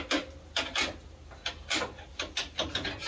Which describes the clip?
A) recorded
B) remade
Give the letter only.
A